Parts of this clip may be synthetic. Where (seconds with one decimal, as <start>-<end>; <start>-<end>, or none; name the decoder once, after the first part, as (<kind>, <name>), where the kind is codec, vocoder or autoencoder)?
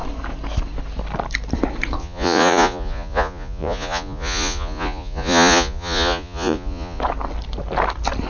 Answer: 2.0-7.0 (vocoder, Vocos)